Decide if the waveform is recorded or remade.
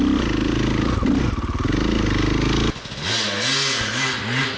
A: recorded